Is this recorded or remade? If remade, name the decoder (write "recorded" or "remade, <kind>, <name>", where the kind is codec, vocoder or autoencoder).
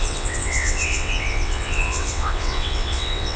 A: remade, vocoder, WaveNeXt